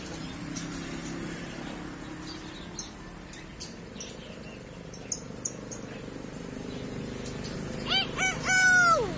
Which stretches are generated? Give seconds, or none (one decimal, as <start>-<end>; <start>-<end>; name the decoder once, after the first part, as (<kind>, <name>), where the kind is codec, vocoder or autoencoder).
none